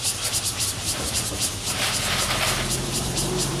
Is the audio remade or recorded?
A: remade